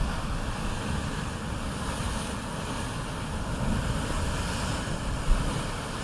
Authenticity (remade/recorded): recorded